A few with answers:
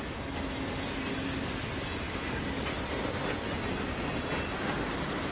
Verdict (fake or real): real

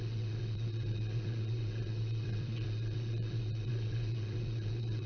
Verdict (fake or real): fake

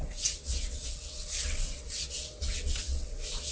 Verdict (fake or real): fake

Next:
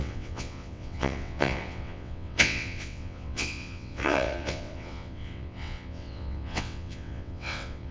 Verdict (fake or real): fake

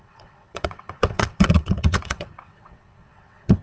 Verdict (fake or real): fake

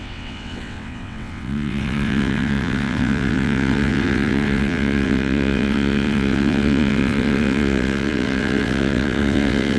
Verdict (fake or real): fake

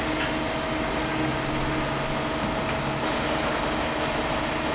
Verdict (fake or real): real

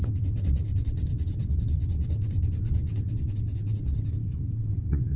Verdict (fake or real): fake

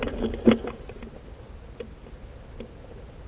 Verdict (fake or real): real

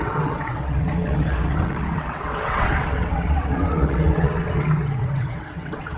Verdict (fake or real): fake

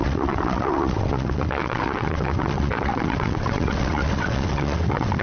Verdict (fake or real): fake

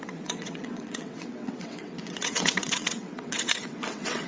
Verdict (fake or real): fake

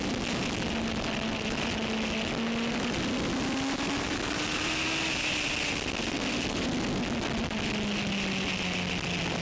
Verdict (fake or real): real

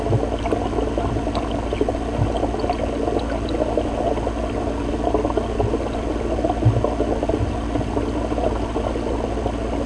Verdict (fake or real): real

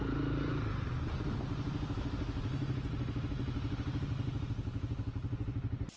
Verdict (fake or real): real